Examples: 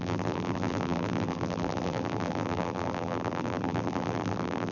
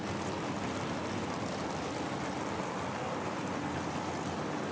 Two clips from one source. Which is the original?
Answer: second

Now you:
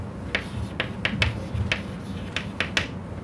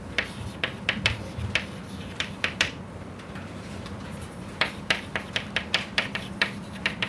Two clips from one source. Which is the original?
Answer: first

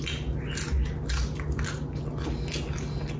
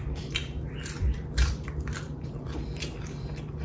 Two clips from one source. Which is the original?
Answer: first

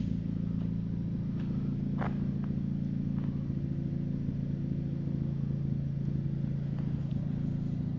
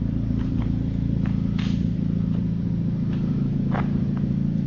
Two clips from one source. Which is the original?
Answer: first